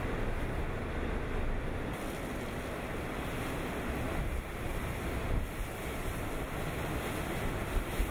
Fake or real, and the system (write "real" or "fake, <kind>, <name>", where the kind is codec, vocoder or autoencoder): real